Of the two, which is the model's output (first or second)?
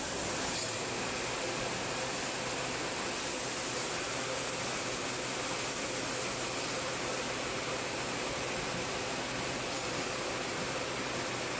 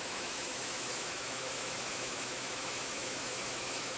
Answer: second